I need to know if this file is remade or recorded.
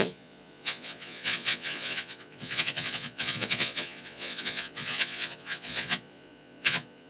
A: remade